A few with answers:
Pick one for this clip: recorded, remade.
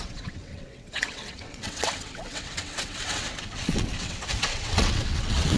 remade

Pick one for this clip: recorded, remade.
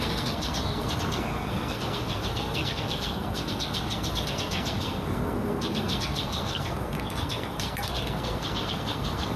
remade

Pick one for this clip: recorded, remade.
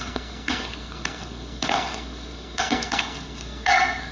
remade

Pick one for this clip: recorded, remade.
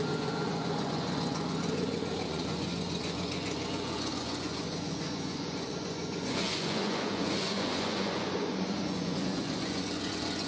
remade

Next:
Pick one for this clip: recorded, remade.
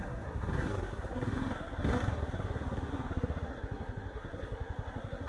remade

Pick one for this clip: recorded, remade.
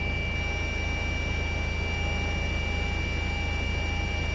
recorded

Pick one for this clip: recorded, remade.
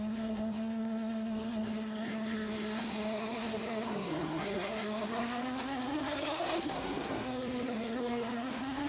remade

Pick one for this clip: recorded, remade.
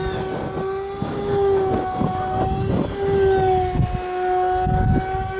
recorded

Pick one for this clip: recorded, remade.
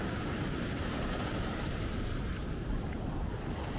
remade